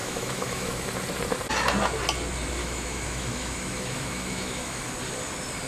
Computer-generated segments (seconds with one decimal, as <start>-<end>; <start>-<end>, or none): 0.0-0.9; 2.6-4.9